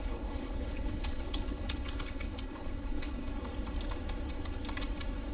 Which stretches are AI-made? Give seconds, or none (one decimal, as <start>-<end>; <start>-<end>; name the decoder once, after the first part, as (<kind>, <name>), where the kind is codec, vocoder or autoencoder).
0.0-3.3 (codec, HILCodec)